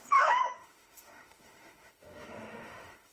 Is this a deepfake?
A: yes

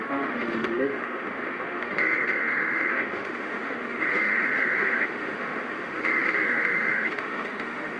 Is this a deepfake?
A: yes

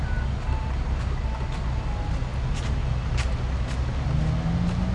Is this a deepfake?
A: no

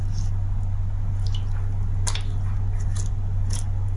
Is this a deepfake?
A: no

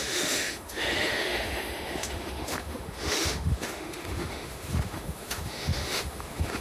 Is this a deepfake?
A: yes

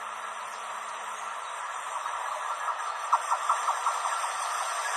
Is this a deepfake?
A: no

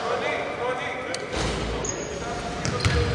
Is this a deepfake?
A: no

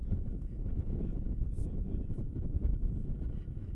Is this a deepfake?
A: no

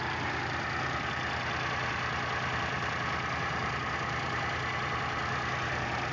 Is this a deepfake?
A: no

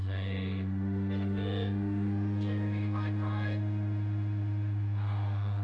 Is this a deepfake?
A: yes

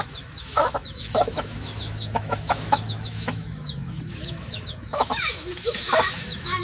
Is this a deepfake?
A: yes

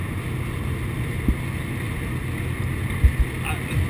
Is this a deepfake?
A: no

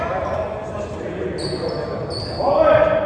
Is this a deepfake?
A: no